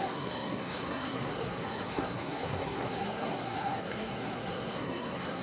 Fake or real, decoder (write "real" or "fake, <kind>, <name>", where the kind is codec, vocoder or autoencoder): fake, codec, SNAC